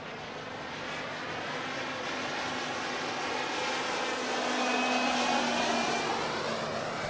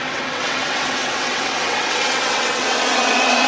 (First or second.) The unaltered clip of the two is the first